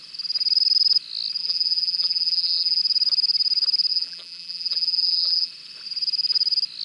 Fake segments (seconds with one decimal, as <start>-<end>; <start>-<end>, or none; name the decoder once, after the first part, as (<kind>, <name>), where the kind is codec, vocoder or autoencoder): 1.4-2.8 (vocoder, BigVGAN v2); 3.9-5.5